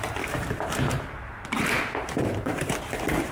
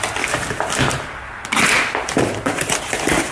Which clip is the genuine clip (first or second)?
second